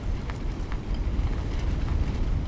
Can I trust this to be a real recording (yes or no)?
yes